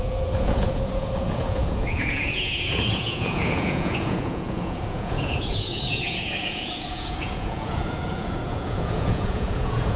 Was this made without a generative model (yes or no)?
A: no